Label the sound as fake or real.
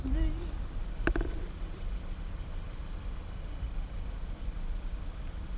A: fake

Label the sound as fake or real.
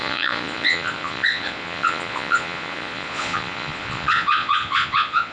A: fake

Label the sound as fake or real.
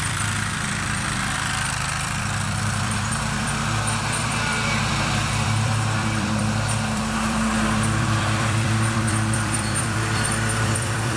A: fake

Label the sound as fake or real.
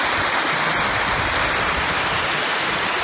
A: real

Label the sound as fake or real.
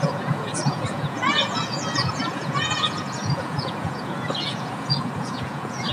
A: fake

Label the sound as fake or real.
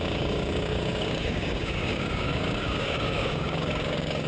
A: fake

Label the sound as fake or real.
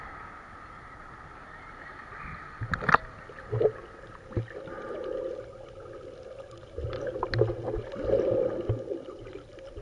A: real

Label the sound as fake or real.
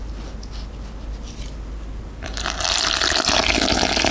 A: real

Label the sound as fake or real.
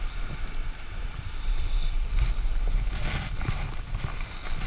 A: real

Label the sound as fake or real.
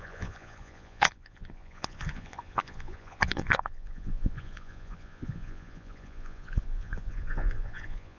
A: fake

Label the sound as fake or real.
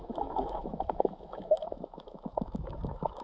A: fake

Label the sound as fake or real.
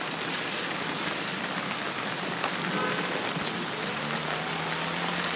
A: real